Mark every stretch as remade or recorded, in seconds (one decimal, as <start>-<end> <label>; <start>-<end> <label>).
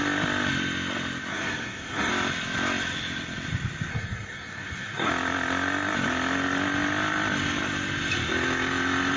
0.0-1.3 recorded; 1.3-2.1 remade; 2.1-3.9 recorded; 3.9-5.1 remade; 5.1-9.2 recorded